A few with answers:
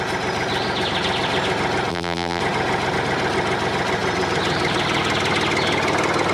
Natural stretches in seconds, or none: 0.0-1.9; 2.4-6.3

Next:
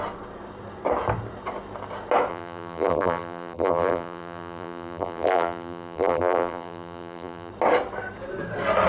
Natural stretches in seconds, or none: 0.0-2.3; 7.5-8.9

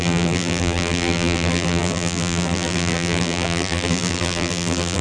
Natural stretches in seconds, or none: none

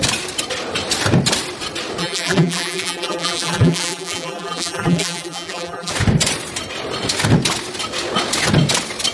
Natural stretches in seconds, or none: 0.0-2.0; 5.9-9.1

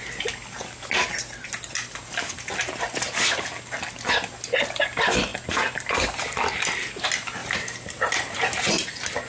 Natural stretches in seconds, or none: 0.0-7.4; 8.7-9.3

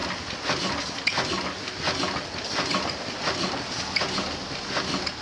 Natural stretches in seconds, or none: 0.0-5.2

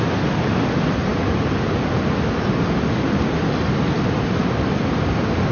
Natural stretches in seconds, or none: 0.0-5.5

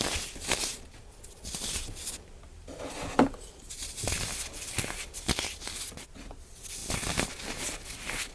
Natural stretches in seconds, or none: 0.0-8.3